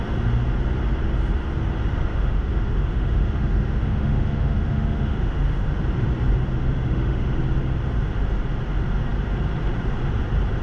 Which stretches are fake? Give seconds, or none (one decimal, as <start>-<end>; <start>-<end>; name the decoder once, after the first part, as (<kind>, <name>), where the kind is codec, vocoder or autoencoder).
2.1-5.8 (autoencoder, DAC-VAE); 6.6-7.4